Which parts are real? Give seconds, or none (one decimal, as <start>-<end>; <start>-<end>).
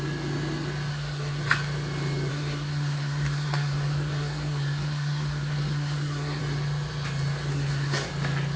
0.0-0.9; 1.4-2.3; 6.4-7.5; 8.1-8.6